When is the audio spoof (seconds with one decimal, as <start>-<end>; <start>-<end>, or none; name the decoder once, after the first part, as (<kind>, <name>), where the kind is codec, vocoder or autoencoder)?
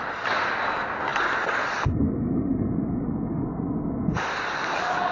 none